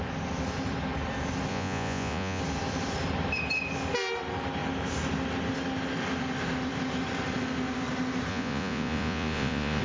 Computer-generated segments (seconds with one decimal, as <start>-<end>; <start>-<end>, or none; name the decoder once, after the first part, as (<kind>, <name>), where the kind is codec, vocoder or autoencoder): 1.5-2.4 (vocoder, Vocos); 8.3-9.8